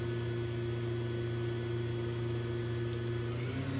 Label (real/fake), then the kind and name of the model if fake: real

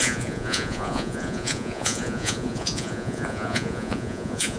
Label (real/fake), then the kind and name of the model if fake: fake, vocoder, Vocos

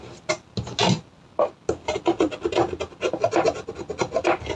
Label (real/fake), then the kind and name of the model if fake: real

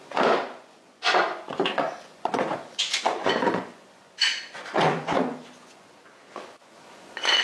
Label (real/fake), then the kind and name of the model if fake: fake, vocoder, Vocos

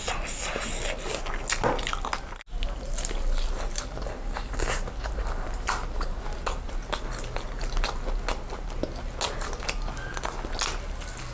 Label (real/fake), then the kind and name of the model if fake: real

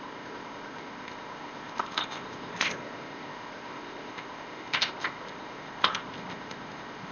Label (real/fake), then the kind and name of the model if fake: fake, codec, ZipCodec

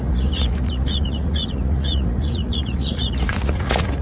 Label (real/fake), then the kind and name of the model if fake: fake, vocoder, Vocos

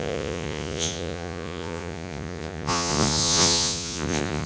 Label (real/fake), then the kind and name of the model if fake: fake, vocoder, Vocos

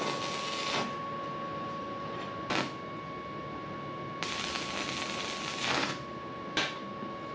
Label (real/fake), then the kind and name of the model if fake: real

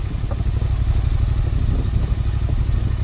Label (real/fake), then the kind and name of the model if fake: real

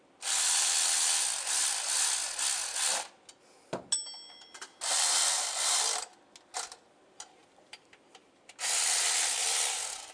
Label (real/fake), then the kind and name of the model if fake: real